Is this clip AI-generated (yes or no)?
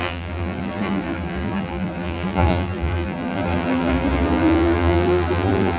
yes